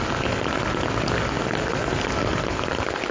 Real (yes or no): yes